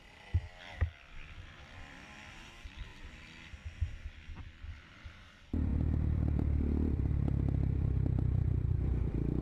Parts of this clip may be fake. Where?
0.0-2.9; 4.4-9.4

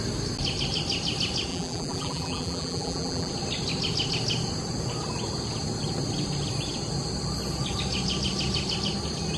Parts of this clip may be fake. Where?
1.5-3.3